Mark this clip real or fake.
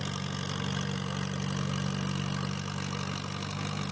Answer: real